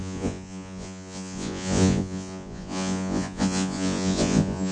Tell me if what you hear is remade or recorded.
remade